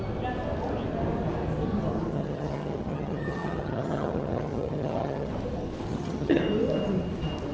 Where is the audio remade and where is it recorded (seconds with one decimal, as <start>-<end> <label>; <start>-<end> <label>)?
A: 0.0-2.1 recorded; 2.1-5.3 remade; 5.3-5.9 recorded; 5.9-6.4 remade; 6.4-7.5 recorded